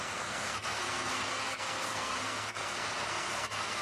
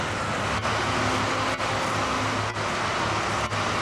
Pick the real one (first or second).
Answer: second